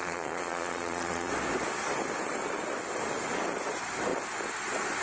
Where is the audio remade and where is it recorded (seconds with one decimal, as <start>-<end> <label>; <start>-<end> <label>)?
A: 0.0-1.3 remade; 1.3-5.0 recorded